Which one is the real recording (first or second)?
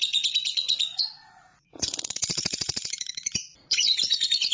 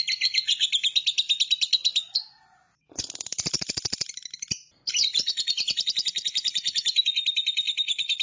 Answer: second